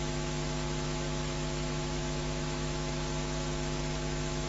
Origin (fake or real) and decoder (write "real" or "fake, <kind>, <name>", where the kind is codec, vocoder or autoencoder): fake, autoencoder, DAC-VAE